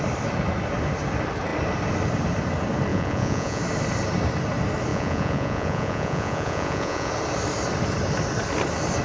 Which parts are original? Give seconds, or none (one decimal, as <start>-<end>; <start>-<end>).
0.0-2.9; 3.6-4.9; 7.1-9.0